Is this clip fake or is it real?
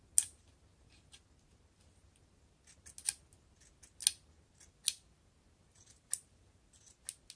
real